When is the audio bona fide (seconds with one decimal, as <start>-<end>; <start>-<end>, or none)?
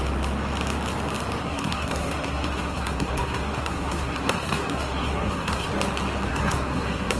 0.0-1.4; 5.7-6.3